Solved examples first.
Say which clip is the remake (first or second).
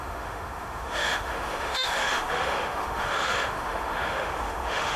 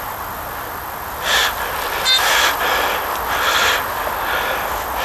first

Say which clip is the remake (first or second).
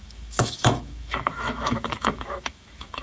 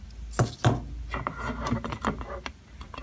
first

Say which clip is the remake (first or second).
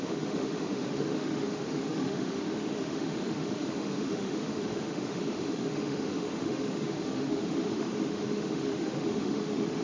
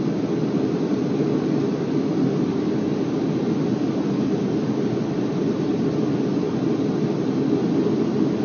first